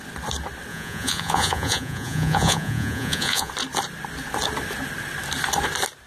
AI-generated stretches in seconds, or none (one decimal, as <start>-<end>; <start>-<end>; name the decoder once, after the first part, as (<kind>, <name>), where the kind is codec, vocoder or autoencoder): 0.7-3.5 (vocoder, Vocos)